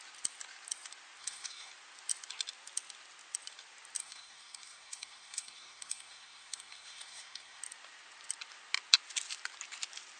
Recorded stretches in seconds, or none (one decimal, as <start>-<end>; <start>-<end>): 0.0-1.2; 1.7-4.0; 7.6-10.2